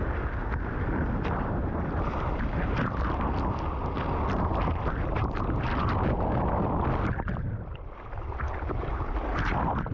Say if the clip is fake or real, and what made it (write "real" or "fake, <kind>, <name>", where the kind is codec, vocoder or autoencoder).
real